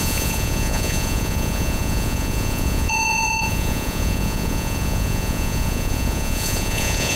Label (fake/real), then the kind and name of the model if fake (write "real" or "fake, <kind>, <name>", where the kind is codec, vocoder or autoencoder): fake, vocoder, Vocos